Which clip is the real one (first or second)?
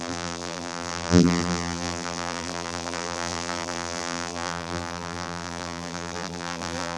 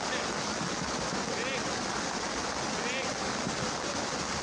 second